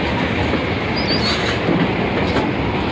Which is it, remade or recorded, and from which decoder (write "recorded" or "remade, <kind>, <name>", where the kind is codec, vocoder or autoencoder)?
recorded